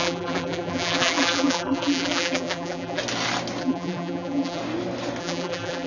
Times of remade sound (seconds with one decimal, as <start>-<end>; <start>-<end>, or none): 0.0-3.0; 3.6-4.6; 5.2-5.9